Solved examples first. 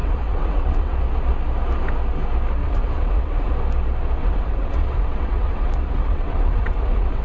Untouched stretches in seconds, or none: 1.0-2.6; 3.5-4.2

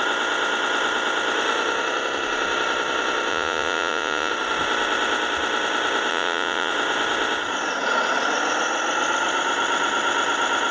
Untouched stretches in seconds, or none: 0.0-3.3; 4.3-6.1; 6.7-10.7